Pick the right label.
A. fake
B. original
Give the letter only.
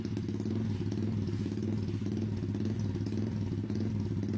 B